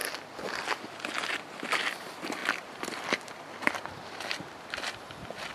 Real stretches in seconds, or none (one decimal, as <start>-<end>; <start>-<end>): none